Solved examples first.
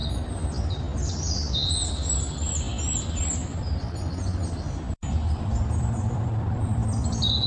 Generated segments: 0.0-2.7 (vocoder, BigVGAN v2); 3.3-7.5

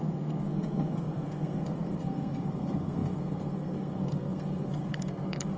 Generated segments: 0.0-5.6 (codec, SNAC)